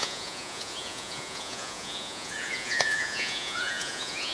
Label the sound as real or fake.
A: fake